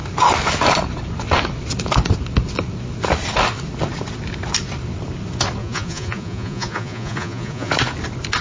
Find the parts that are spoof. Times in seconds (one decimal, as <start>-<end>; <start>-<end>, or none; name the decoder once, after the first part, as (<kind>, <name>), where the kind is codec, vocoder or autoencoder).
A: 5.6-7.7 (vocoder, Vocos)